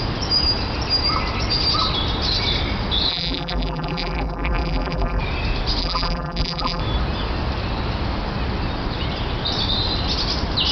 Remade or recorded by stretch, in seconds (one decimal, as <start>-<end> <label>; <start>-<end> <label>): 0.0-3.1 recorded; 3.1-5.2 remade; 5.2-5.8 recorded; 5.8-6.8 remade; 6.8-10.7 recorded